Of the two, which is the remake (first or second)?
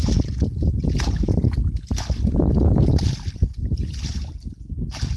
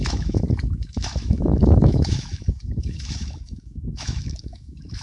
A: second